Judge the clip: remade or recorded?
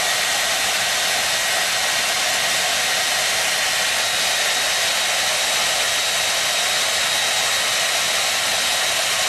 recorded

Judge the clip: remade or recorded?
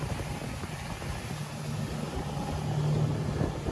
recorded